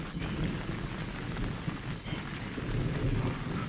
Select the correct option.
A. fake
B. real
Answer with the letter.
B